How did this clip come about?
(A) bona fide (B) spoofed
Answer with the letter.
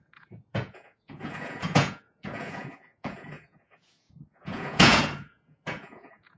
B